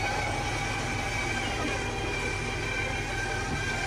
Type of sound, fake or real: real